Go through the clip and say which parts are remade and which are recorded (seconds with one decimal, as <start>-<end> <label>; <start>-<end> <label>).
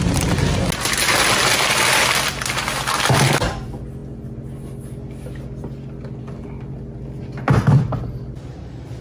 0.0-9.0 recorded